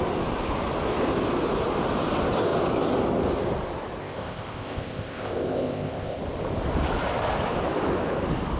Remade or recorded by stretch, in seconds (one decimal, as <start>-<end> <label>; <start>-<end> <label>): 0.0-4.0 recorded; 4.0-6.2 remade; 6.2-8.6 recorded